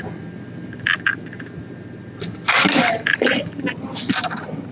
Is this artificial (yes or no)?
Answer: no